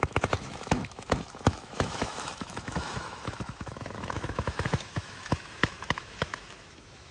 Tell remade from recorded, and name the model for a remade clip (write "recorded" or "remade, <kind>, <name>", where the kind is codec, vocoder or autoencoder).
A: remade, autoencoder, DAC-VAE